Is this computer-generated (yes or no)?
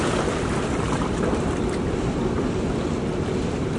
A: no